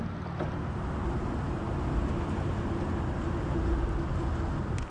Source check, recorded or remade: recorded